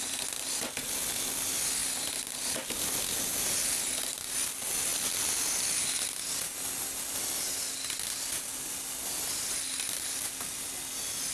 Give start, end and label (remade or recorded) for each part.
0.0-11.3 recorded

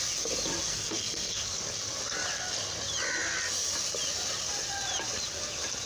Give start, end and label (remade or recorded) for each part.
0.0-0.6 recorded; 0.6-1.5 remade; 1.5-5.9 recorded

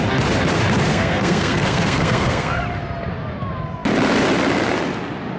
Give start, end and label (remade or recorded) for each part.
0.0-0.9 recorded; 0.9-2.6 remade; 2.6-5.4 recorded

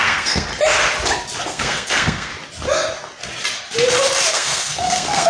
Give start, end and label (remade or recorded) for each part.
0.0-0.5 remade; 0.5-1.4 recorded; 1.4-2.3 remade; 2.3-4.3 recorded; 4.3-5.3 remade

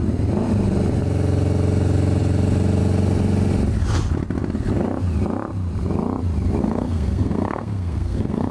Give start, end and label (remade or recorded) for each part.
0.0-6.6 recorded; 6.6-8.5 remade